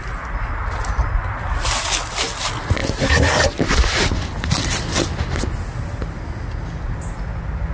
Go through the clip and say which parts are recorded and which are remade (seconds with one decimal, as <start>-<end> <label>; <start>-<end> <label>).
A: 0.0-7.7 recorded